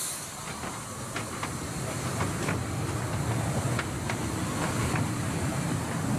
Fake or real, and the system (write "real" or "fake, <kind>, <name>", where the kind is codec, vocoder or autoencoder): real